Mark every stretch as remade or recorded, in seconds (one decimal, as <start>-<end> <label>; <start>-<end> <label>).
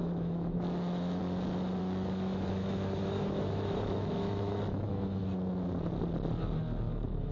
0.0-1.2 remade; 1.2-1.8 recorded; 1.8-5.2 remade; 5.2-6.8 recorded; 6.8-7.3 remade